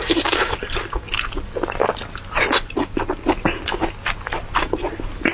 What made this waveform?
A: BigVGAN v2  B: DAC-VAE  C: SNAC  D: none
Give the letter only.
D